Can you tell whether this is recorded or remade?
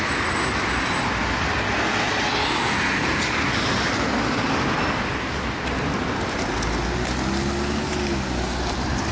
recorded